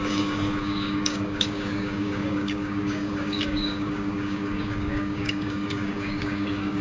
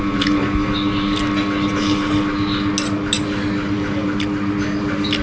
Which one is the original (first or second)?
second